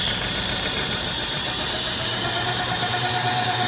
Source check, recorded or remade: remade